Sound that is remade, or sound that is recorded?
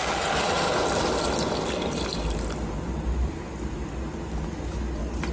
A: recorded